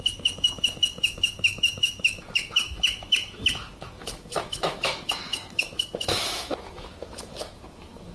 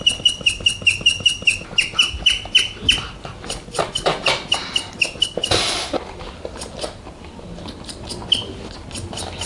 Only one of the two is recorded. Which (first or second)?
second